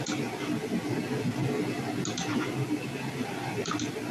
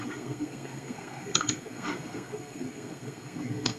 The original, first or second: first